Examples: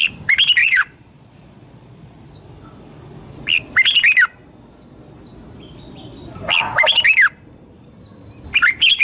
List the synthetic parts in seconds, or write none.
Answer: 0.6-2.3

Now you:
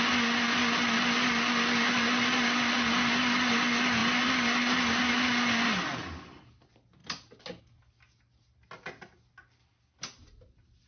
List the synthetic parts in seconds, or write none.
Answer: none

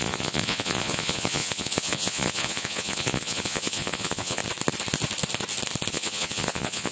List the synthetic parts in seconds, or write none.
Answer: 0.0-4.4; 5.9-6.9